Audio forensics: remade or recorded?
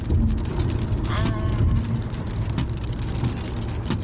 recorded